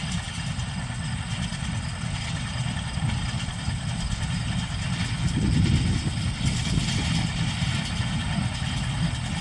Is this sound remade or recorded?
recorded